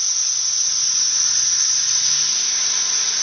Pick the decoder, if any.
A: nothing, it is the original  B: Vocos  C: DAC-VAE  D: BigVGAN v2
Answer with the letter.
B